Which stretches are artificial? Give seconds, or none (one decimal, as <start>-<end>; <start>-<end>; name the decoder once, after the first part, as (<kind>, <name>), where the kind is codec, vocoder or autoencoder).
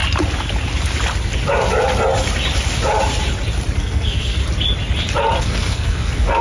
3.8-4.4 (codec, SNAC); 5.4-6.4